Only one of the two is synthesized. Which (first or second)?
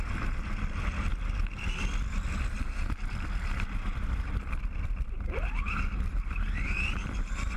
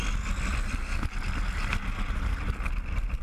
first